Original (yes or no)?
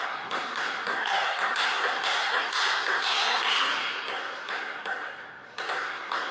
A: no